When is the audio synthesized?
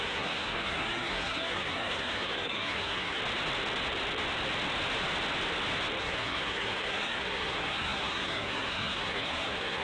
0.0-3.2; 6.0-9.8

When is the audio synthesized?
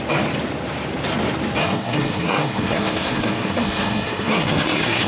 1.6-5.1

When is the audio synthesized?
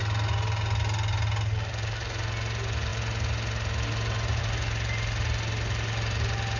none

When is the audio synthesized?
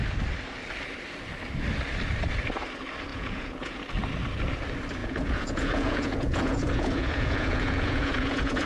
3.1-3.8; 5.0-8.7